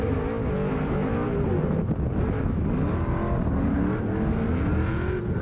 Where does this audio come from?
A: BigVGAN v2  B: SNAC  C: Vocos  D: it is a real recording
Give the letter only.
D